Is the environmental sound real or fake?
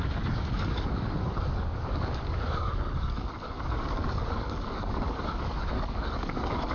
fake